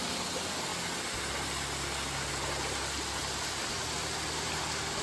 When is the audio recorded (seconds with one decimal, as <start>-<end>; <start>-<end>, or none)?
0.0-3.2; 4.6-5.0